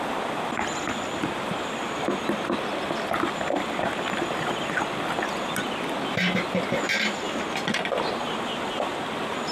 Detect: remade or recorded recorded